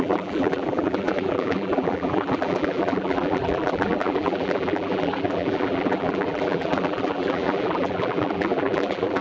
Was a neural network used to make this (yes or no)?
yes